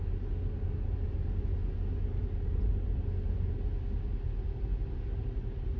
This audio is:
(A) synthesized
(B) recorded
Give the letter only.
B